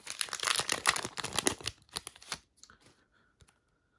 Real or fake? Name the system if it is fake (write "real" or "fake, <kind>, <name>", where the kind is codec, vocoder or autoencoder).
real